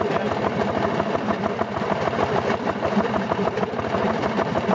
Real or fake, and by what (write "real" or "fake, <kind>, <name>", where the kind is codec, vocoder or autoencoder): real